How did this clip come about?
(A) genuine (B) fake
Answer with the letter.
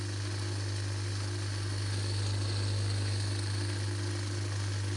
A